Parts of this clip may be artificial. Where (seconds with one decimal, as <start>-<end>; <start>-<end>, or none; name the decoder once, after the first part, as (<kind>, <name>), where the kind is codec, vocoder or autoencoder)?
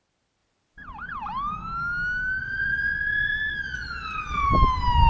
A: 2.4-4.5 (vocoder, Vocos)